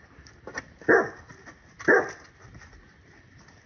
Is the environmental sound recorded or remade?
recorded